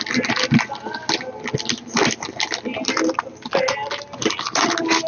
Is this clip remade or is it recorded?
recorded